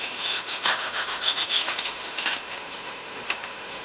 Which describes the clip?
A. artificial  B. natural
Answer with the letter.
A